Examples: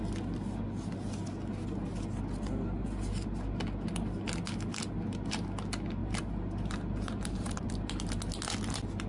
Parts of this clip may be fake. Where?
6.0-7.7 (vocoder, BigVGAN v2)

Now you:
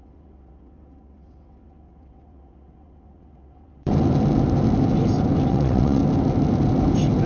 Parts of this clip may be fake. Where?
0.0-3.9 (vocoder, WaveNeXt); 5.5-6.0

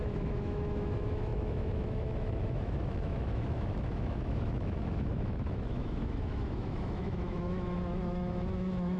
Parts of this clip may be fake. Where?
0.0-9.0 (autoencoder, DAC-VAE)

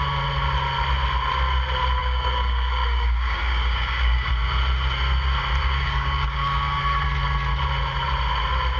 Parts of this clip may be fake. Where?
2.0-4.3 (codec, DAC); 5.6-6.8

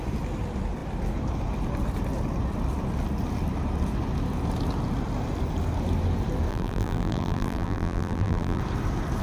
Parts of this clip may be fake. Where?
6.5-8.6 (vocoder, BigVGAN v2)